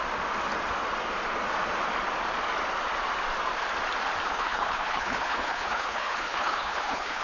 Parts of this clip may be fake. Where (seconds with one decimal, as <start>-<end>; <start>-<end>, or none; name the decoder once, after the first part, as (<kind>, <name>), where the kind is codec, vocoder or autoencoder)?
4.3-7.2 (codec, HILCodec)